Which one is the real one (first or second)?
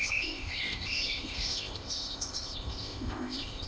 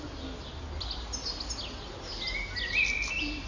second